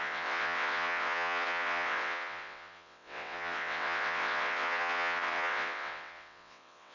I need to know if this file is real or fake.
fake